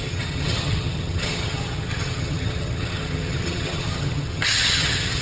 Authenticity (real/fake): fake